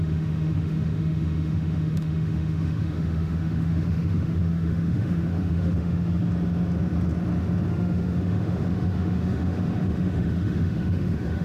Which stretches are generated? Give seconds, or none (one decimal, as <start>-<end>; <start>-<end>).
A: 0.0-6.2; 7.7-11.4